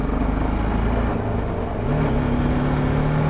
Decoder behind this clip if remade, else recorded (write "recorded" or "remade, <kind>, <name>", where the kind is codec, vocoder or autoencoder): recorded